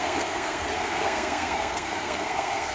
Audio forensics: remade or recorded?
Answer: remade